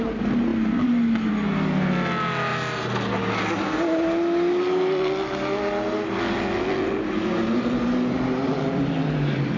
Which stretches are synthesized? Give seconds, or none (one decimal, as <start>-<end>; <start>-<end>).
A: none